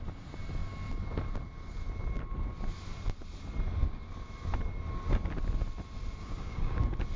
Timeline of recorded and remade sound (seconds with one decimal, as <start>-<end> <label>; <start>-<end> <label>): 0.0-6.2 recorded; 6.2-6.8 remade; 6.8-7.2 recorded

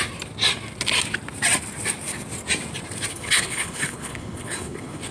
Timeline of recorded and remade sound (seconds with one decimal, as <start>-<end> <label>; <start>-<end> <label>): 0.0-3.1 recorded; 3.1-5.1 remade

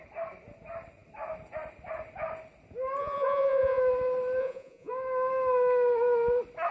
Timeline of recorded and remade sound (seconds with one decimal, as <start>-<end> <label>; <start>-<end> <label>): 0.0-3.0 recorded; 3.0-3.8 remade; 3.8-4.4 recorded; 4.4-4.9 remade; 4.9-6.7 recorded

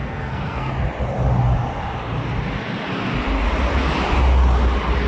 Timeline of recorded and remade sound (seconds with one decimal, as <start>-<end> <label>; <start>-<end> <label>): 0.0-0.7 remade; 0.7-5.1 recorded

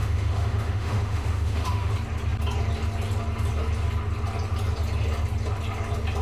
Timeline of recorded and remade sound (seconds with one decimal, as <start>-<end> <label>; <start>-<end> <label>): 0.0-1.9 remade; 1.9-6.2 recorded